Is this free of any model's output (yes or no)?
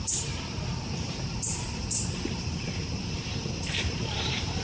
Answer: no